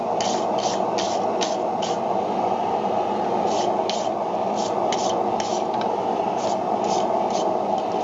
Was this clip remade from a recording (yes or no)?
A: no